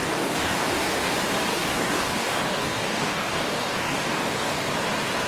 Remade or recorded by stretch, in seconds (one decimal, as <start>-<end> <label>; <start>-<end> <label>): 0.0-1.1 remade; 1.1-1.5 recorded; 1.5-4.7 remade; 4.7-5.3 recorded